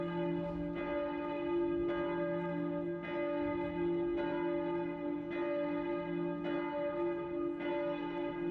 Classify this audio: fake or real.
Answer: real